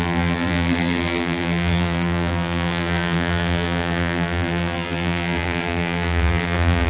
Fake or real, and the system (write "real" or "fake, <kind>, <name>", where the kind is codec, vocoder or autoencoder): fake, vocoder, BigVGAN v2